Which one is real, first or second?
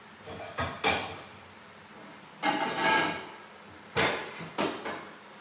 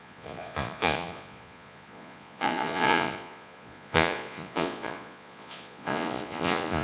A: first